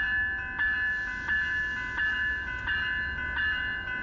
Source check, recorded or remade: recorded